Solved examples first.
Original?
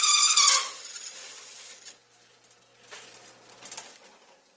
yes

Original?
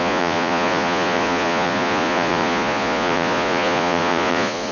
no